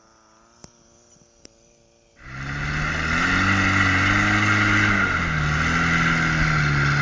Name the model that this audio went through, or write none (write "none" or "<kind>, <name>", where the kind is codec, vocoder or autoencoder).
none